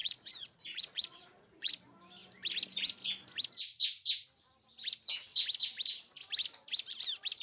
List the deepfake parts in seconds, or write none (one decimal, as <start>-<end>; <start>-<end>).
0.0-1.7